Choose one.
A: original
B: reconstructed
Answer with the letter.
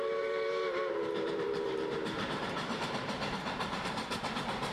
B